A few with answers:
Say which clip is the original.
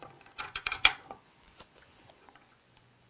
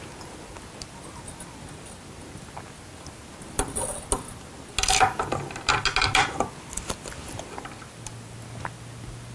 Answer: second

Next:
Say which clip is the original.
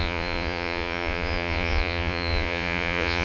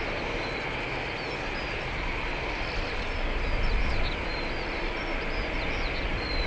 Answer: second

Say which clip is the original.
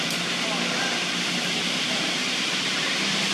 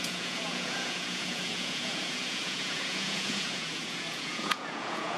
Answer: first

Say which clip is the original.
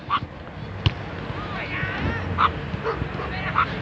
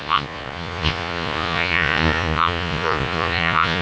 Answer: first